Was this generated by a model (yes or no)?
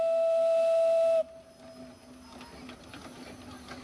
no